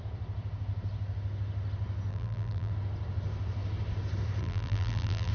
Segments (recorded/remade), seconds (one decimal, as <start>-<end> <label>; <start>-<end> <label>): 0.0-2.1 recorded; 2.1-2.7 remade; 2.7-4.4 recorded; 4.4-5.3 remade